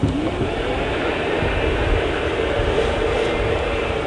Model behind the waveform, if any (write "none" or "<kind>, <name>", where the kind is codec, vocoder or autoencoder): vocoder, BigVGAN v2